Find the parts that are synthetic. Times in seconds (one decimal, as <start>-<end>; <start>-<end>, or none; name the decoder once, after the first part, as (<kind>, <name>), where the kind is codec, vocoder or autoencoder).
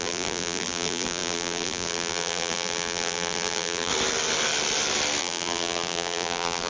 0.0-3.9 (vocoder, BigVGAN v2); 5.2-6.7